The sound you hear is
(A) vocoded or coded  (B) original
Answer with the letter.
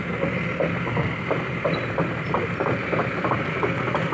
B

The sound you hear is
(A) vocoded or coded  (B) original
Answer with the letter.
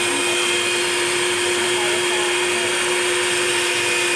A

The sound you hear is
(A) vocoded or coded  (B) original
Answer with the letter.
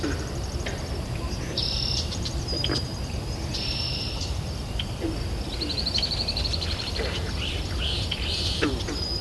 A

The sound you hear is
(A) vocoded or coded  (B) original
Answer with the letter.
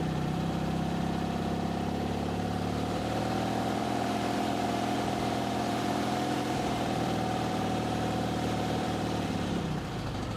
A